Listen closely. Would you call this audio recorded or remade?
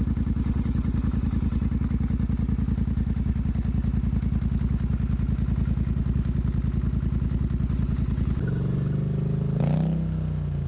recorded